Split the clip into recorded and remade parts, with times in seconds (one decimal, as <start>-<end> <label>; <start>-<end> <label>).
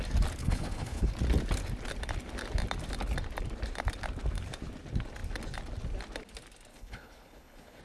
0.0-0.4 recorded; 0.4-1.1 remade; 1.1-6.7 recorded; 6.7-7.8 remade